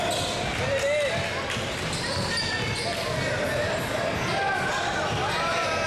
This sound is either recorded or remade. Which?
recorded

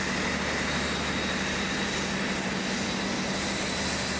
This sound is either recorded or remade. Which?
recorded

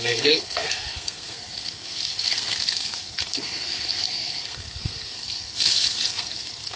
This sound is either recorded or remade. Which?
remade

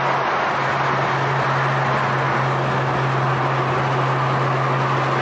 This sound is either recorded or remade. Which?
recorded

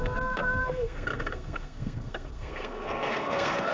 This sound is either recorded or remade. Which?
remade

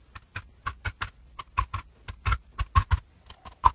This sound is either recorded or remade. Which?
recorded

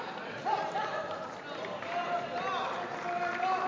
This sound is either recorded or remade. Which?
recorded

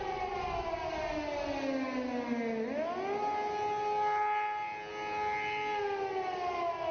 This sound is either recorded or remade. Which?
recorded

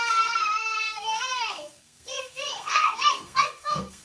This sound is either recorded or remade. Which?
remade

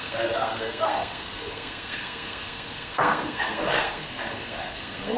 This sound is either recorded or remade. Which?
remade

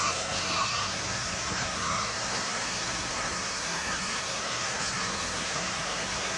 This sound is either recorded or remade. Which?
remade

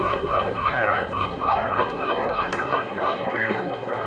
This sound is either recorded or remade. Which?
remade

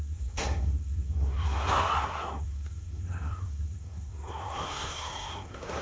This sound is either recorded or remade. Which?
remade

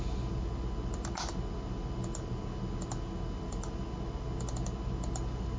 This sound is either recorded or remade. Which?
recorded